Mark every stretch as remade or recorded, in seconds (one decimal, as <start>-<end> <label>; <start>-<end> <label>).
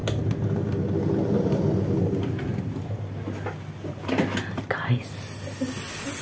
0.0-6.2 recorded